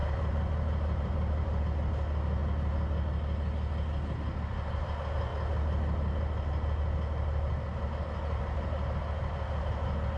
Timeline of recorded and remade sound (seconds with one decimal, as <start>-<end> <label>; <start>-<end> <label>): 0.0-1.6 remade; 1.6-10.2 recorded